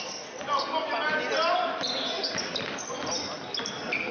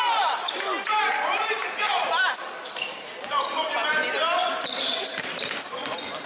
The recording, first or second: first